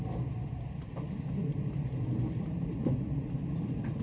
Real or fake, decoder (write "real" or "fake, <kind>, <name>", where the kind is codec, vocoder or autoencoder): real